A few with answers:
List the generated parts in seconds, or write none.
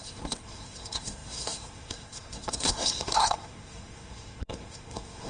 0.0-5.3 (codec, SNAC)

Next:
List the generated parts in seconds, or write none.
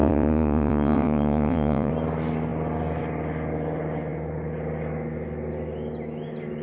0.0-1.9 (vocoder, WaveNeXt)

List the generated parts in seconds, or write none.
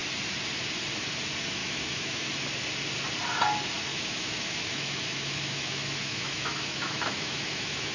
1.6-2.3 (autoencoder, DAC-VAE); 3.9-7.9